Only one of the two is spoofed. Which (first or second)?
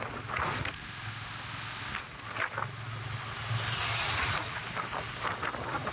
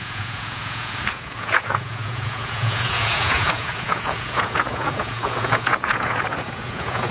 second